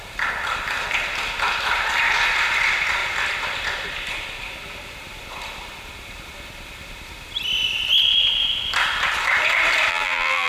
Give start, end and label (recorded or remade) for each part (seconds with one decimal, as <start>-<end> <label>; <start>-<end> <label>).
0.0-9.9 recorded; 9.9-10.5 remade